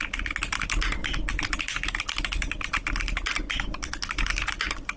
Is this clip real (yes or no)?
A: yes